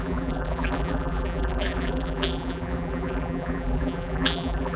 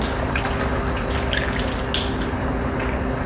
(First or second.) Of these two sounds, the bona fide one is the second